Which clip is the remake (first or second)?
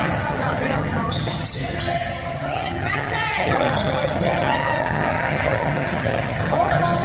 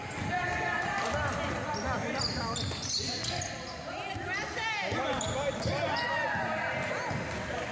first